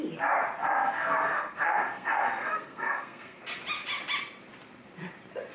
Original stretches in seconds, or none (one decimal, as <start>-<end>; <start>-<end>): 0.0-0.6; 3.4-5.5